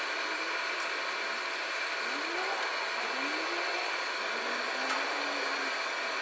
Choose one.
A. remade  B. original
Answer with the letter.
B